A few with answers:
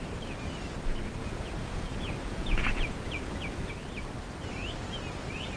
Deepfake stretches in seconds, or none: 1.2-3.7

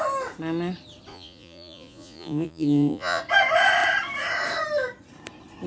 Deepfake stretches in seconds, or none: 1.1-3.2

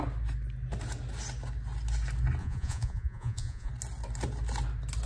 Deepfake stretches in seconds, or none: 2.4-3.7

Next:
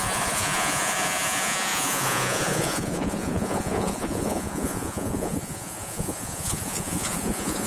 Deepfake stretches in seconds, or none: 0.0-7.7